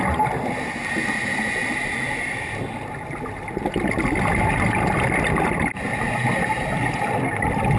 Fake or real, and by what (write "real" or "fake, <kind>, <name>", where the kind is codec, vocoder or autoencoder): real